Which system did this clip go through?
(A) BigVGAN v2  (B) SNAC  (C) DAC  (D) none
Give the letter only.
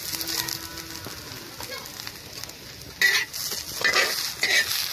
D